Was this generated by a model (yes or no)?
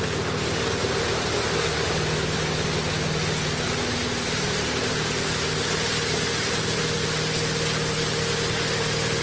no